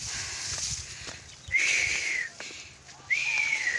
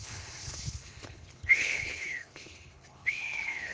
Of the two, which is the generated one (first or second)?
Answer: second